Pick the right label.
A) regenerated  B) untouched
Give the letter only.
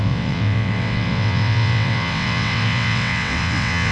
A